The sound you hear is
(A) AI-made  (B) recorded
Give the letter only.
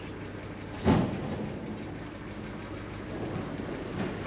B